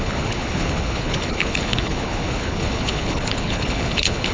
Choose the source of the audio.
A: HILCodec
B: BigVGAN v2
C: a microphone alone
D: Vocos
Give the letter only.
A